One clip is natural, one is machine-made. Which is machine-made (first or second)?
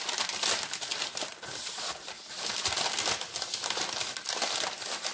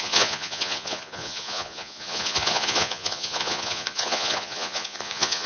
second